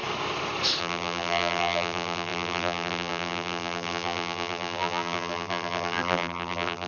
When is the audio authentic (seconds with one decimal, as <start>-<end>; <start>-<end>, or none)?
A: 0.0-0.8